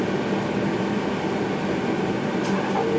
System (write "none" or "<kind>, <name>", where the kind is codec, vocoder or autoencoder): none